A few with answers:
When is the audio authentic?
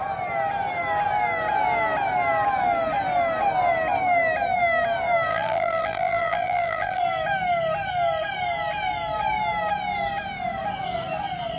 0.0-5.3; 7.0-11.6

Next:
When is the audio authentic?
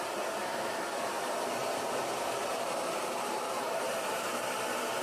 0.0-1.6; 4.3-5.0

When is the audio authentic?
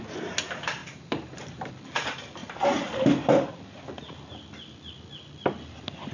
0.0-0.8; 1.7-2.4; 3.5-6.1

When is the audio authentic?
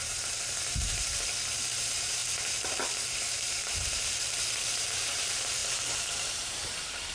2.2-3.1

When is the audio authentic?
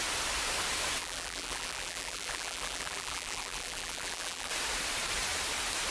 0.0-1.0; 4.5-5.9